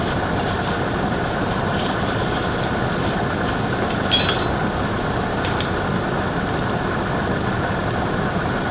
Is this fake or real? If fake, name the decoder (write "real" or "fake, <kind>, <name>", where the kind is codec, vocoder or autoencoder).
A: real